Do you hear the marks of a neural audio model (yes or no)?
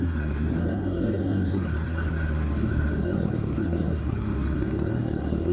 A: yes